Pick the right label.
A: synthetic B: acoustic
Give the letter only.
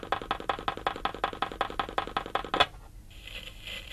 B